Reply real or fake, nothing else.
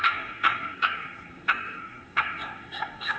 fake